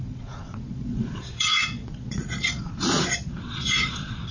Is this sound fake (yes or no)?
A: yes